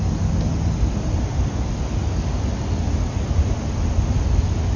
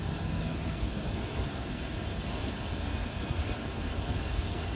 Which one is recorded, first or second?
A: first